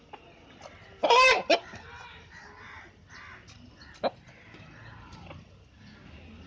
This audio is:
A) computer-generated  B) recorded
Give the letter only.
B